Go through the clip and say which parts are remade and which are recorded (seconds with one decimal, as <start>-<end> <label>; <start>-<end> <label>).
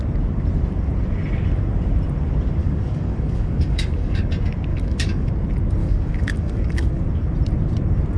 0.0-2.6 recorded; 2.6-4.3 remade; 4.3-4.7 recorded; 4.7-5.3 remade; 5.3-5.8 recorded; 5.8-7.0 remade; 7.0-8.2 recorded